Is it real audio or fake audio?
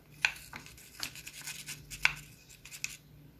real